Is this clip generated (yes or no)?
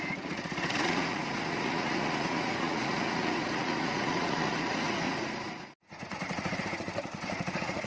yes